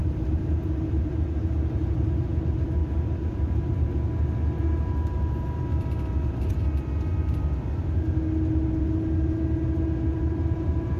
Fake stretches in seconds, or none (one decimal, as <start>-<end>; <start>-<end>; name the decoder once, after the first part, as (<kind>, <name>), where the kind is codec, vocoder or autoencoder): 0.0-1.1 (vocoder, BigVGAN v2)